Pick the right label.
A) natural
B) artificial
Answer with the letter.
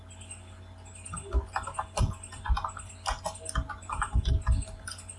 A